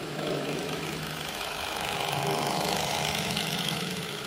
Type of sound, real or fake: fake